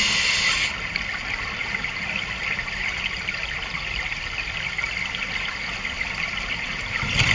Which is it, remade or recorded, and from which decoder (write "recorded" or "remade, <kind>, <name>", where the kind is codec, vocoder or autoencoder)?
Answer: recorded